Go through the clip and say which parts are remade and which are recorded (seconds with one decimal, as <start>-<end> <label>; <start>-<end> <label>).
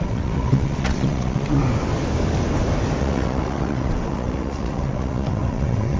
0.0-1.6 remade; 1.6-3.0 recorded; 3.0-6.0 remade